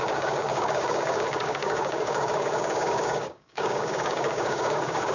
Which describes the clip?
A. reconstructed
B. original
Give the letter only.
A